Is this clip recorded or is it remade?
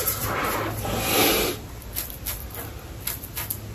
recorded